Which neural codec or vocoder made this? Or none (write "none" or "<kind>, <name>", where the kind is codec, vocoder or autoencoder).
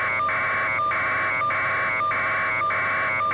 none